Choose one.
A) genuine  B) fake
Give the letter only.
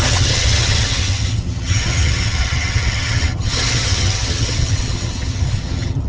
B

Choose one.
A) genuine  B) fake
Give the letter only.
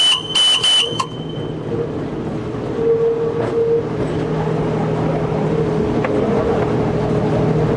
A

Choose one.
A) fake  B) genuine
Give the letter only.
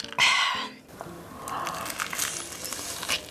B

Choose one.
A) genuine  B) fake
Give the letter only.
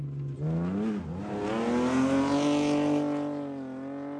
A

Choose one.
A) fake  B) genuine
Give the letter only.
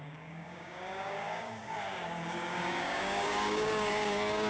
A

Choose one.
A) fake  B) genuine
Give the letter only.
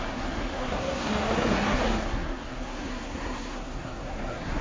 A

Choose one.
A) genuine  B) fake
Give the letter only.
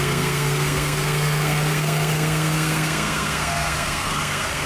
B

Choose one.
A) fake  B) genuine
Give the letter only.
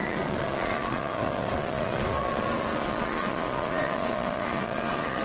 A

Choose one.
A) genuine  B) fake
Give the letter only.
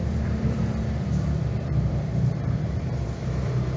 B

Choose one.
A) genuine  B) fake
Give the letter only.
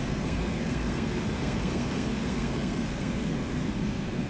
B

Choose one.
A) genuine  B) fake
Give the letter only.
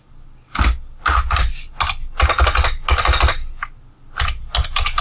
A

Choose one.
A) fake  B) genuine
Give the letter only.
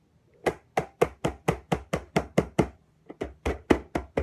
B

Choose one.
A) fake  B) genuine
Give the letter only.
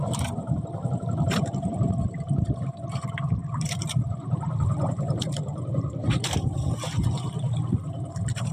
A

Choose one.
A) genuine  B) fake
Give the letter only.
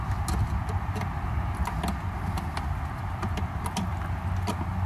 A